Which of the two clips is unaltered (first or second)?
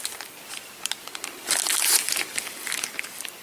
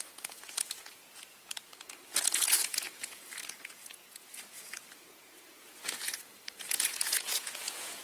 first